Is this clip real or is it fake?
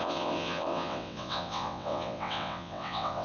fake